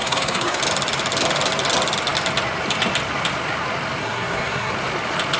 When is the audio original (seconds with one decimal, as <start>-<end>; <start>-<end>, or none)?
0.6-4.0; 4.7-5.4